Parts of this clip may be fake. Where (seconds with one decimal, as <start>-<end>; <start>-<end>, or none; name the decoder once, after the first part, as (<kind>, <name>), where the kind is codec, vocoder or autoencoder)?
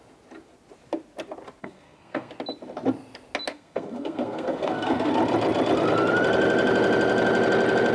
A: 1.6-2.3 (codec, SNAC); 3.5-5.1